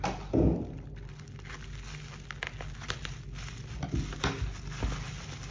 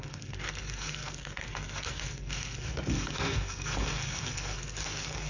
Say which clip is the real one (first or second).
first